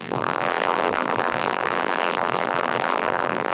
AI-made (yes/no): yes